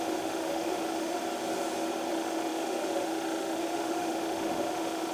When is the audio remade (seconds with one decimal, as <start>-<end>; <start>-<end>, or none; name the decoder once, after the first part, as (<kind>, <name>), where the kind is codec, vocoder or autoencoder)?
0.0-1.2 (autoencoder, DAC-VAE); 2.1-5.1